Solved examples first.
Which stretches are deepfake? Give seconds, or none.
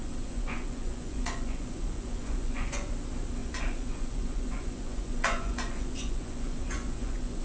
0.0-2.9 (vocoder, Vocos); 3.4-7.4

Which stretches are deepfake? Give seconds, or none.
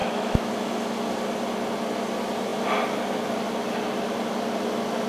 0.0-0.5 (autoencoder, DAC-VAE)